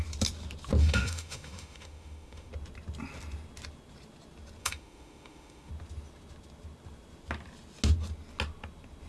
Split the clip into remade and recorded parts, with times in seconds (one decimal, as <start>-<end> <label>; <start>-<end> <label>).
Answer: 0.0-0.8 recorded; 0.8-2.5 remade; 2.5-4.6 recorded; 4.6-5.7 remade; 5.7-9.1 recorded